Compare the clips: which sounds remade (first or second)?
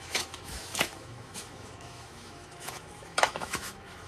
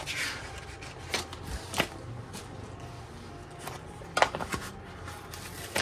first